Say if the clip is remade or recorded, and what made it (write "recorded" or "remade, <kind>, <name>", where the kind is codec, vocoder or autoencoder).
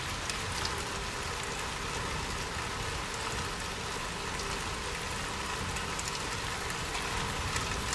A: recorded